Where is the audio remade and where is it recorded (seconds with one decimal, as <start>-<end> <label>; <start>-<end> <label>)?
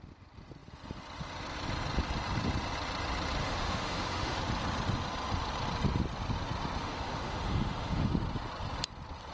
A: 0.0-3.4 recorded; 3.4-4.4 remade; 4.4-6.8 recorded; 6.8-8.1 remade; 8.1-9.3 recorded